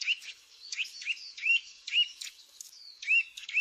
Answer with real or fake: fake